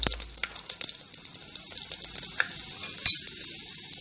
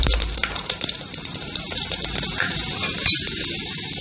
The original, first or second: first